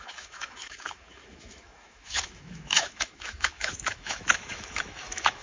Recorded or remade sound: remade